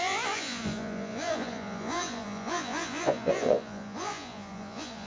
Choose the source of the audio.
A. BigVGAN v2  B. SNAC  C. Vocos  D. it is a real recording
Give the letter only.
C